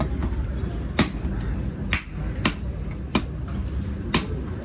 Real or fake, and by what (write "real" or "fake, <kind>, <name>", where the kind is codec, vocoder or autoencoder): real